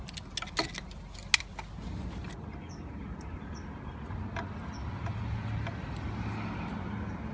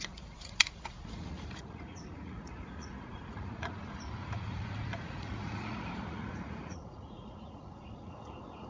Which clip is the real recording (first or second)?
first